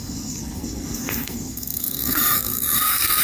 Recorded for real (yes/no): no